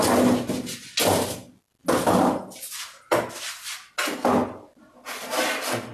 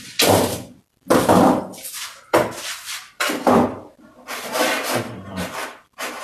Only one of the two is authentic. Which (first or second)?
first